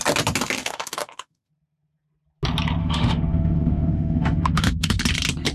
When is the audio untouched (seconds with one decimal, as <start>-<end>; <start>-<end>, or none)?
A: 0.0-0.6; 1.5-2.8; 5.0-5.5